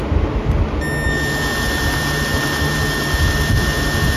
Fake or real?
real